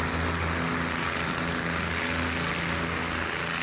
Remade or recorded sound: recorded